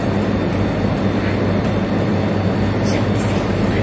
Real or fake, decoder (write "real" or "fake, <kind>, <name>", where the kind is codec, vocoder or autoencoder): real